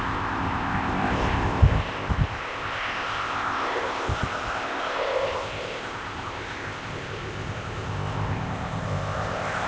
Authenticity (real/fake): fake